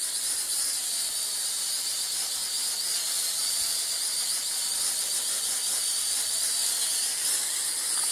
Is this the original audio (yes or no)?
yes